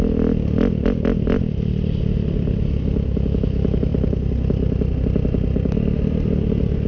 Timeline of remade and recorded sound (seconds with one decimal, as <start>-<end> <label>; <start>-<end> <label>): 0.0-6.9 recorded